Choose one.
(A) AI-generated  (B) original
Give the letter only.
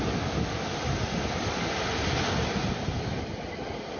B